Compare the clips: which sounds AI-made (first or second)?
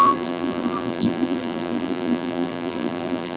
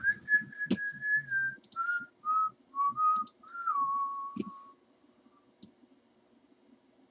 first